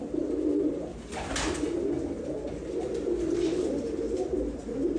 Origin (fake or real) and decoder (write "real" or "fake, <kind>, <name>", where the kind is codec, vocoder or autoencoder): real